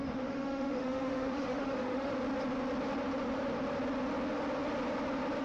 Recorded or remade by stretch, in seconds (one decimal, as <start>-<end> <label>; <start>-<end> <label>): 0.0-2.1 remade; 2.1-5.4 recorded